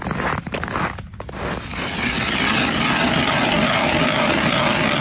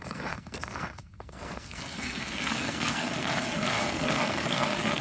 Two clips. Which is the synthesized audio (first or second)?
second